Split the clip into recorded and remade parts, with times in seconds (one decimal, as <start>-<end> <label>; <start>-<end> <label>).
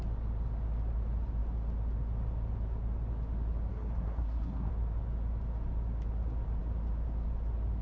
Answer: 0.0-3.7 recorded; 3.7-4.7 remade; 4.7-7.8 recorded